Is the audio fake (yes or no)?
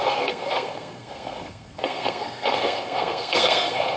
yes